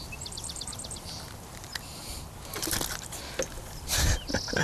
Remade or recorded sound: recorded